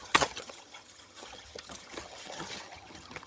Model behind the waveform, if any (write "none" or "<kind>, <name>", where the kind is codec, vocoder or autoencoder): vocoder, HiFi-GAN